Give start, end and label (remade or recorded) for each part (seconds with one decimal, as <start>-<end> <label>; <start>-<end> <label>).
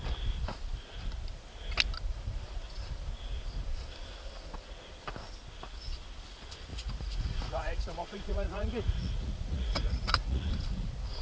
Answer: 0.0-6.7 recorded; 6.7-10.5 remade; 10.5-11.2 recorded